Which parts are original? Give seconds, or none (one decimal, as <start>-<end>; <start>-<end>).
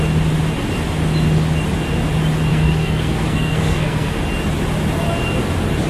0.0-2.5; 4.2-5.9